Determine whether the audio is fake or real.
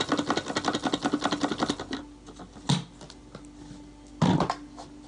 real